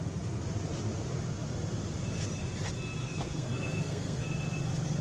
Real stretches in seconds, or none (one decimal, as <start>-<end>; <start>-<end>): 0.0-3.0; 4.3-5.0